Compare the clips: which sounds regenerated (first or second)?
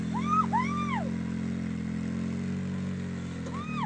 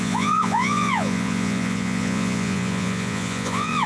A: second